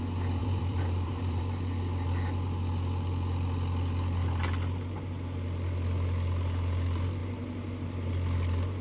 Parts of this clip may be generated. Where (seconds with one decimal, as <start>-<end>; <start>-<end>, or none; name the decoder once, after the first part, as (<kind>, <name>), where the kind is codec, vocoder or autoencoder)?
0.4-1.4 (vocoder, BigVGAN v2)